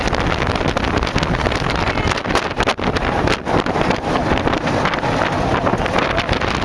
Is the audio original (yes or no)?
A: yes